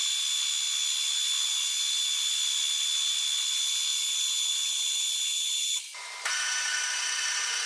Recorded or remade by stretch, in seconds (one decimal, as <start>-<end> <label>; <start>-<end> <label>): 0.0-7.7 recorded